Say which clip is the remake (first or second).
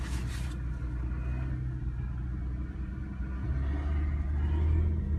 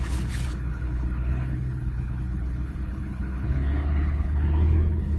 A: second